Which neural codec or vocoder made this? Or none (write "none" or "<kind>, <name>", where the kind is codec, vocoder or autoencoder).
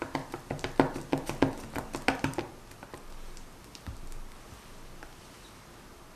none